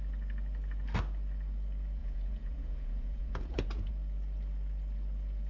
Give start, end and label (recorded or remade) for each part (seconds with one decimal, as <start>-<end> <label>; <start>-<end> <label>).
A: 0.0-2.0 recorded; 2.0-3.9 remade; 3.9-5.5 recorded